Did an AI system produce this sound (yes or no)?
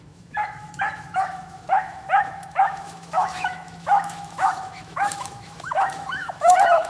yes